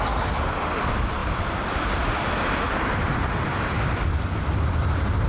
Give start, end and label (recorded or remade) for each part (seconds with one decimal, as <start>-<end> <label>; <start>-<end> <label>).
0.0-5.3 remade